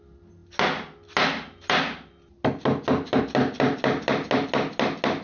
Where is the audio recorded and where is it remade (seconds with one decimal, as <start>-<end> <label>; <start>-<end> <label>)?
0.0-5.2 recorded